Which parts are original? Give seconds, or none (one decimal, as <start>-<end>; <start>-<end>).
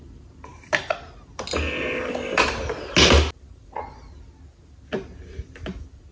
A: 0.0-3.5; 4.1-6.1